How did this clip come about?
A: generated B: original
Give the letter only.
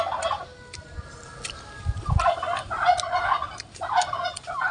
B